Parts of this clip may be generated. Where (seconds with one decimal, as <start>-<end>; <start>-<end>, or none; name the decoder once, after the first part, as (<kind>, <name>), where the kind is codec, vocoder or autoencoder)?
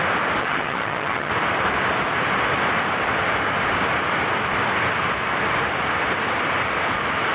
0.4-1.3 (vocoder, HiFi-GAN)